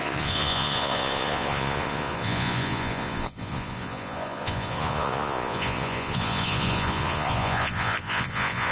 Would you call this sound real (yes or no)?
no